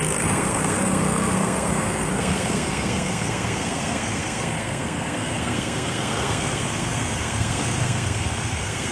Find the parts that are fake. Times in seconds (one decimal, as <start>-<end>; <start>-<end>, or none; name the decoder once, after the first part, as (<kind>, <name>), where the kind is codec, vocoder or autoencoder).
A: 0.0-8.9 (codec, SNAC)